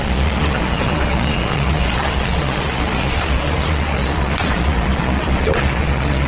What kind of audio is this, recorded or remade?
remade